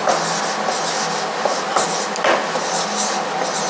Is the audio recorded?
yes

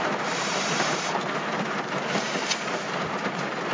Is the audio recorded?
no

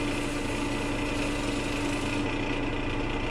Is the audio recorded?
yes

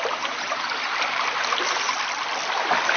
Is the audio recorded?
no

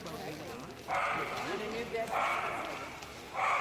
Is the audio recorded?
yes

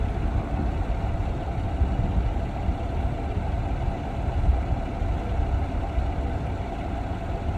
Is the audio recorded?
yes